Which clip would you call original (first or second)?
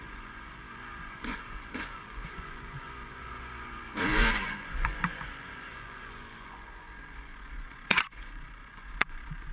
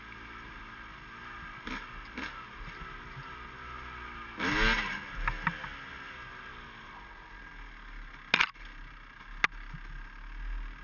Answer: second